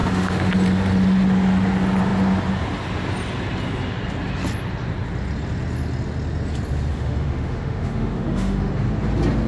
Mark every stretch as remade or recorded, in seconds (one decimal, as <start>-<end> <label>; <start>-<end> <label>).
0.0-0.5 remade; 0.5-6.9 recorded; 6.9-8.7 remade; 8.7-9.5 recorded